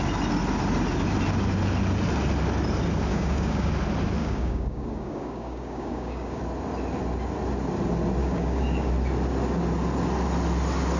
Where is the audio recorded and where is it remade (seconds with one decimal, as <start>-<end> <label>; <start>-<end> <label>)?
0.0-3.1 recorded; 3.1-3.7 remade; 3.7-4.2 recorded; 4.2-6.4 remade; 6.4-8.2 recorded; 8.2-8.9 remade; 8.9-11.0 recorded